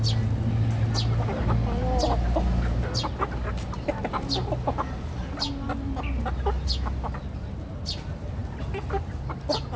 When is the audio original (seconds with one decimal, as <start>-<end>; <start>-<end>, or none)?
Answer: 0.0-9.8